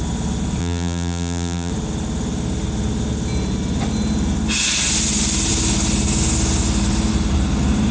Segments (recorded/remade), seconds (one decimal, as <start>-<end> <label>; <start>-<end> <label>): 0.0-0.6 recorded; 0.6-1.7 remade; 1.7-7.9 recorded